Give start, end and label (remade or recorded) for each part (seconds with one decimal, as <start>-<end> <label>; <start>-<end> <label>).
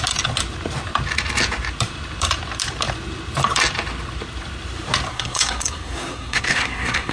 0.0-5.1 recorded; 5.1-7.1 remade